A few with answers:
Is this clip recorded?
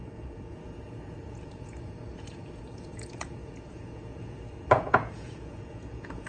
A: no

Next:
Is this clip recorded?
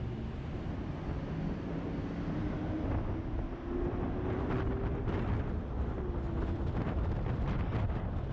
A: yes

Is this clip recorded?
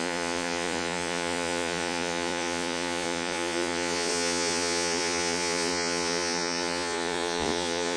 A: no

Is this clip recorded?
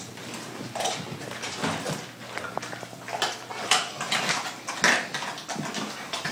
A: yes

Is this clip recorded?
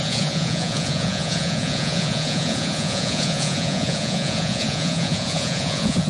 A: no